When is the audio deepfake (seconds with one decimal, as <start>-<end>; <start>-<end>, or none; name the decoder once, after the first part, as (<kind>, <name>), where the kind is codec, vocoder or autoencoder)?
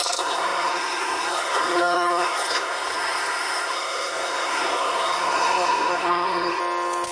0.0-6.6 (codec, SNAC)